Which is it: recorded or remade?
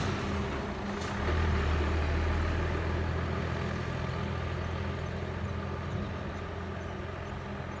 recorded